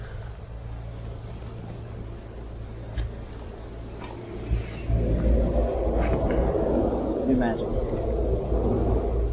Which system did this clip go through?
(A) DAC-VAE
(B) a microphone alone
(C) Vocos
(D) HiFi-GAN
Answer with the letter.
B